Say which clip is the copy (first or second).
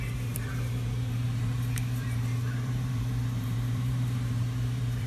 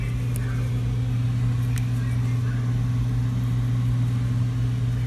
first